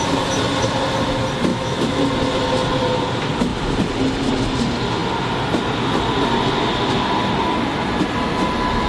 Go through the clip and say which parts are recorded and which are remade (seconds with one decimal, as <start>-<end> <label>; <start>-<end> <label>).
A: 0.0-1.5 recorded; 1.5-2.0 remade; 2.0-8.9 recorded